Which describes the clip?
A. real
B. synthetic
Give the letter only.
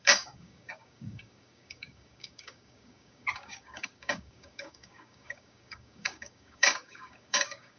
B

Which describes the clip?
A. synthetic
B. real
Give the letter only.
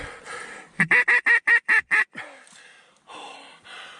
B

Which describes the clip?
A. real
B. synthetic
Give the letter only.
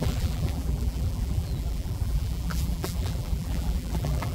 B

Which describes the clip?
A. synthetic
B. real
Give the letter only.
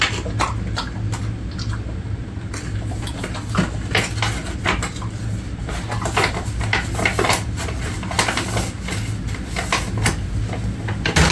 B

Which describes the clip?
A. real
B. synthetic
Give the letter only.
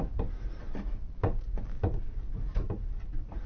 A